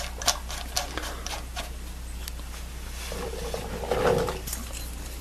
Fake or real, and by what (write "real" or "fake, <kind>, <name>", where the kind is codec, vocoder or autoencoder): real